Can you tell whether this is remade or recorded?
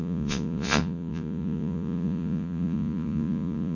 remade